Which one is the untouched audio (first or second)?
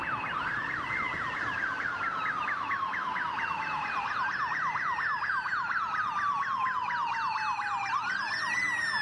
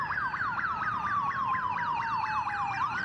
first